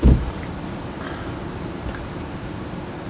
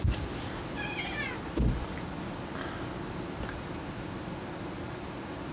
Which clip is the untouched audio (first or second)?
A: second